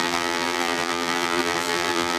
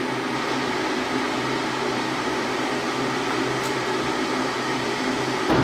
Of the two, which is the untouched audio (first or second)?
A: second